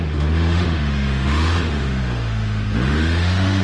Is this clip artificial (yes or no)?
yes